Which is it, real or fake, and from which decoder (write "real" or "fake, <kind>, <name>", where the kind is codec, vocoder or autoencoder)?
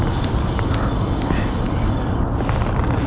real